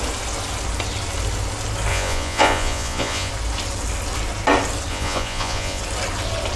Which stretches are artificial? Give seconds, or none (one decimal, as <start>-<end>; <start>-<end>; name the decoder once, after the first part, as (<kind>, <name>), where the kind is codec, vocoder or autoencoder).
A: 1.9-3.3 (vocoder, Vocos); 4.9-5.8